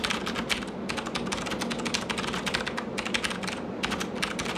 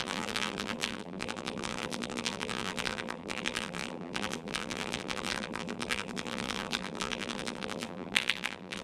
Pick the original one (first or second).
first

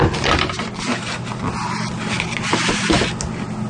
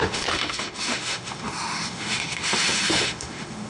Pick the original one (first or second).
first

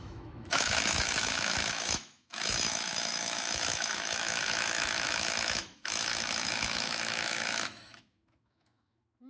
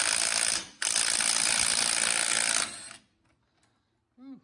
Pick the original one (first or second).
second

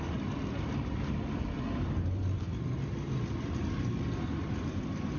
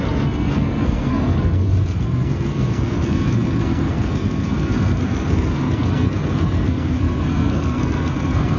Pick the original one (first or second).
first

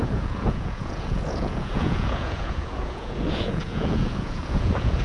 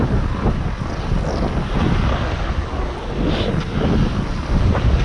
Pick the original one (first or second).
second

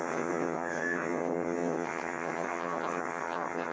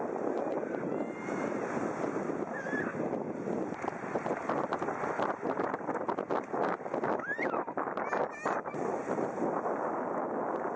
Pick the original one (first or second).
second